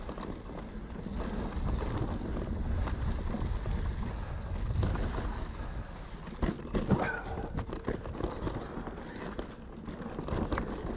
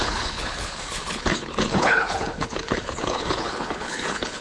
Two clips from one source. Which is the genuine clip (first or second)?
first